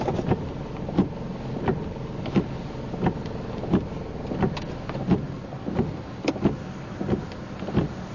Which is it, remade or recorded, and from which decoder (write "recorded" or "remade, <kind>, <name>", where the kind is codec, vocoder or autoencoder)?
recorded